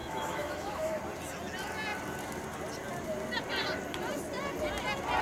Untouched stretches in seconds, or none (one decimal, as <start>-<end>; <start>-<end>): 1.0-5.2